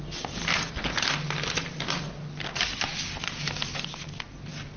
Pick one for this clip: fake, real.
real